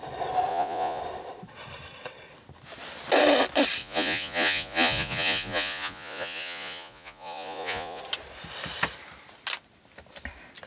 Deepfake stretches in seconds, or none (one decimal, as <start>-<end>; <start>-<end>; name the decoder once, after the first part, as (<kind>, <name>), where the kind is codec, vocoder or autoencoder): 0.5-1.0 (vocoder, Vocos); 3.8-8.0